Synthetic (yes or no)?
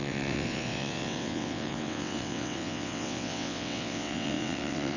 yes